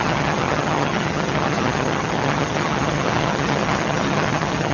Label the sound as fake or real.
fake